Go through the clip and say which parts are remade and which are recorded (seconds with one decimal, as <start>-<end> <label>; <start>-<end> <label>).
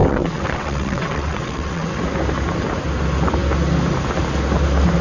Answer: 0.0-2.0 remade; 2.0-5.0 recorded